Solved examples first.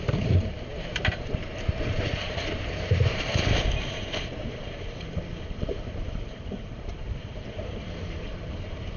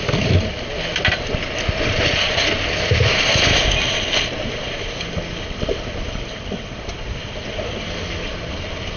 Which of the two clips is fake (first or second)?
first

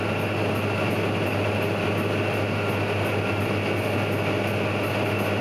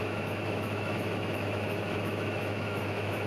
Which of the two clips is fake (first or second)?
second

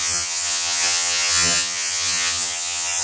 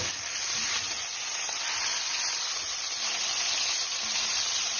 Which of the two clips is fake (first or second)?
first